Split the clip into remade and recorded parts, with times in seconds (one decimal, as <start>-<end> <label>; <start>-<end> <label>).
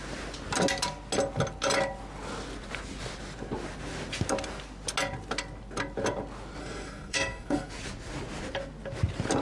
0.0-6.6 recorded; 6.6-7.7 remade; 7.7-9.4 recorded